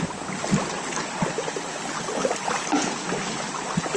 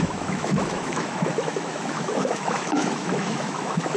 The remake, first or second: second